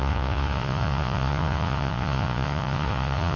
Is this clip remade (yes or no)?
yes